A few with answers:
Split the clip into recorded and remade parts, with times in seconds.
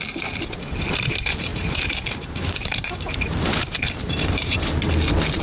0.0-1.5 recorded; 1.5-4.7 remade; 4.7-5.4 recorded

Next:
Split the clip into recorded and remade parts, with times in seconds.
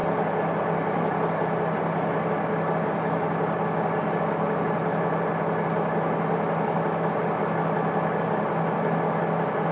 0.0-9.7 recorded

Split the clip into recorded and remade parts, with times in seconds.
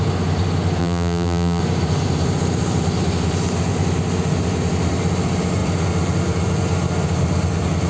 0.0-0.8 recorded; 0.8-1.6 remade; 1.6-7.9 recorded